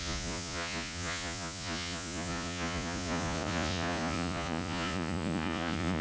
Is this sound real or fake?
fake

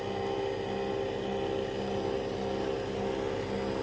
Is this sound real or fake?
real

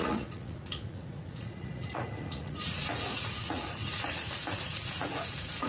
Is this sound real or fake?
fake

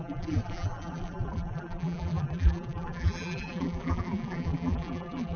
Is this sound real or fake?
fake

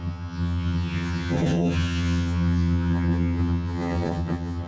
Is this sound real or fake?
fake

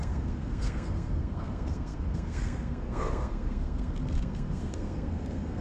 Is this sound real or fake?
fake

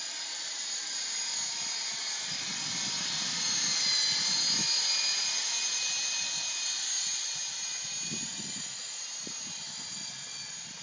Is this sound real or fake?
real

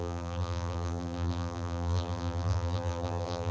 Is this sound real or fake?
fake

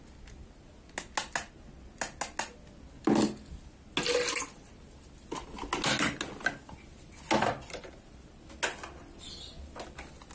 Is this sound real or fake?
real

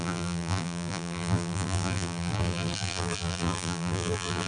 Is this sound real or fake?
fake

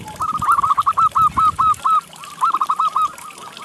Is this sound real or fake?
real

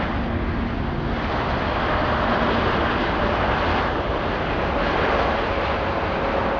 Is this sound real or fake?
real